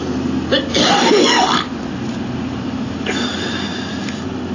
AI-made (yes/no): no